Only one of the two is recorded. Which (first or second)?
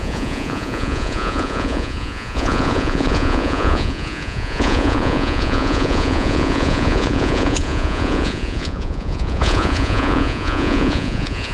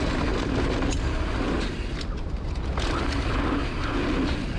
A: second